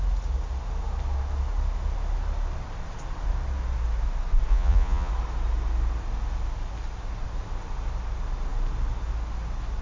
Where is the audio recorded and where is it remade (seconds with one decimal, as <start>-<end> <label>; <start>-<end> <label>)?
0.0-4.5 recorded; 4.5-5.1 remade; 5.1-9.8 recorded